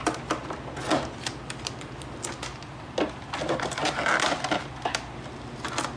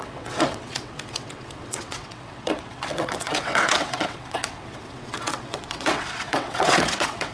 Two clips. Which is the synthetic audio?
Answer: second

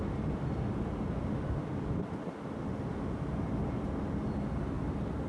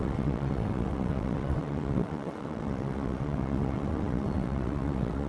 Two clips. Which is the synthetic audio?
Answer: second